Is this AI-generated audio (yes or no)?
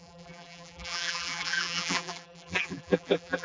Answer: yes